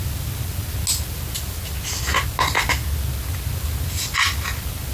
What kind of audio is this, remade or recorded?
recorded